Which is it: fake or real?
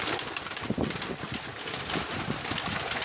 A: real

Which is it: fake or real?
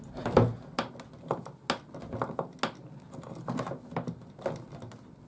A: real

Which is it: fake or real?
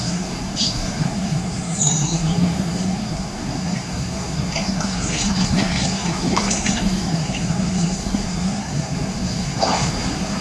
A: fake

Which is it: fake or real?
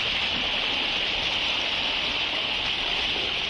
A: real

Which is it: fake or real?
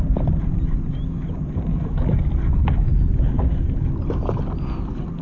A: real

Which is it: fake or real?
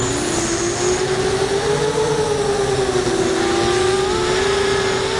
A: real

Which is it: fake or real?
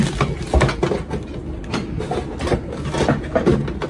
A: real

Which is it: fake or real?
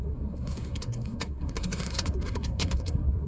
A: fake